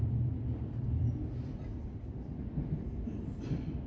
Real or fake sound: real